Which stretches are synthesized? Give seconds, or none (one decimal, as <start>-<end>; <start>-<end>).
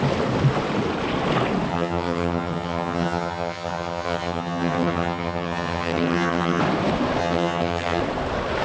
1.7-6.6; 7.2-8.0